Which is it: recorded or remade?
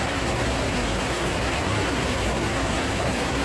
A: remade